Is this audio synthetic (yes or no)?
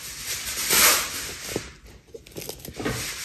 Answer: no